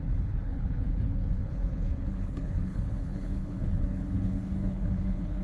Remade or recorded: remade